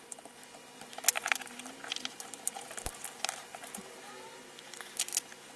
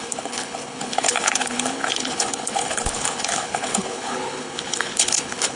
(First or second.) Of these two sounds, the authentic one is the first